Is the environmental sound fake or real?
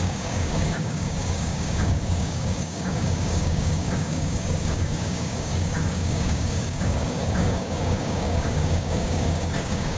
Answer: fake